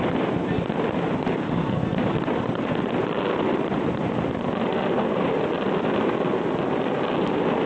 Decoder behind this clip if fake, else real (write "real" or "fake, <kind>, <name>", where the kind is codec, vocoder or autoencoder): real